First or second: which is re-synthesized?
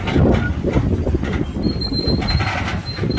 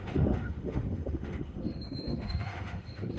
second